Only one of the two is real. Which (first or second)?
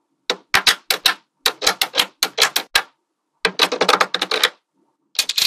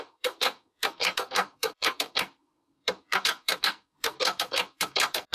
first